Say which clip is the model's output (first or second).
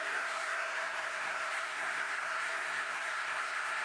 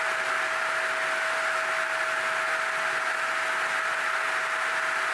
first